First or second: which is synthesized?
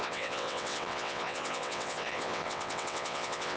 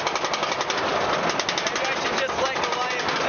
first